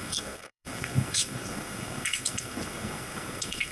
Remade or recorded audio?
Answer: remade